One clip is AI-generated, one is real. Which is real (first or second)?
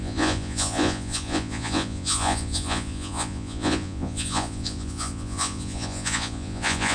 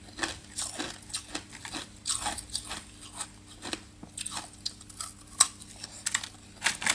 second